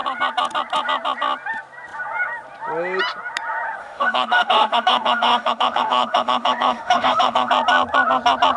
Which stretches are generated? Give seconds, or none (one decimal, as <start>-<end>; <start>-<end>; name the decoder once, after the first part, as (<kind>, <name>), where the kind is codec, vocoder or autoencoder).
3.8-7.5 (autoencoder, DAC-VAE)